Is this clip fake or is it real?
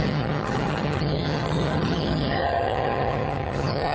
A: fake